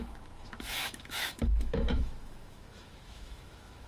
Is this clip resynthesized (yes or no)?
yes